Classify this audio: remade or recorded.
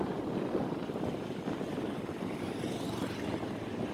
recorded